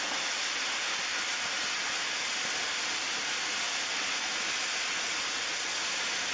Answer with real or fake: real